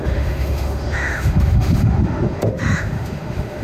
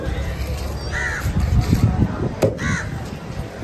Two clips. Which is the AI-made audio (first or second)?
first